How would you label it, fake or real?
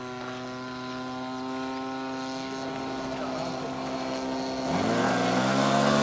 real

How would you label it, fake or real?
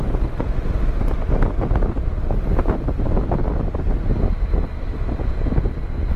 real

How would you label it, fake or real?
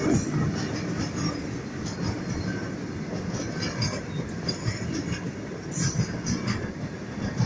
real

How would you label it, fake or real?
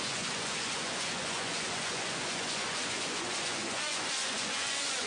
fake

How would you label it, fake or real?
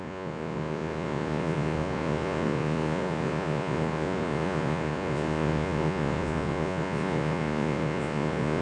fake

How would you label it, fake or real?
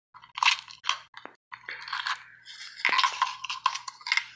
real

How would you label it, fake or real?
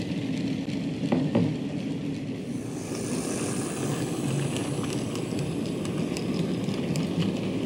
real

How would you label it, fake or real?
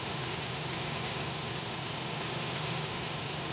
fake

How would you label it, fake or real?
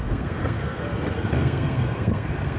fake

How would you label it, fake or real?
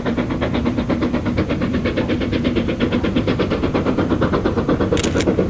real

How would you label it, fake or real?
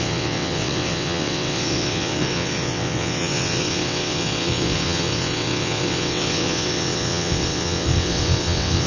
fake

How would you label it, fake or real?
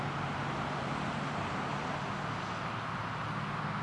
real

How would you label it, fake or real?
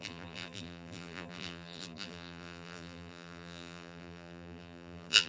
fake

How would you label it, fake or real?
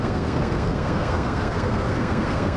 fake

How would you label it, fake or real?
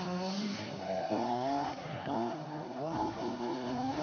fake